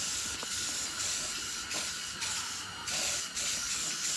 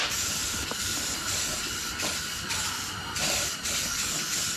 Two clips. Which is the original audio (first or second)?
first